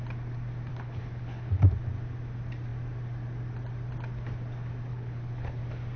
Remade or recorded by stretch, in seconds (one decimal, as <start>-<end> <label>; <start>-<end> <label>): 0.0-0.7 recorded; 0.7-1.6 remade; 1.6-4.9 recorded; 4.9-5.6 remade; 5.6-6.0 recorded